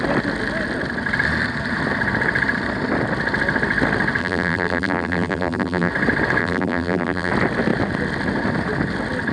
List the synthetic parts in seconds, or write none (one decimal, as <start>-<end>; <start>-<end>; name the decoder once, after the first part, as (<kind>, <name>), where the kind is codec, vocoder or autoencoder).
4.2-5.9 (vocoder, BigVGAN v2); 6.4-7.3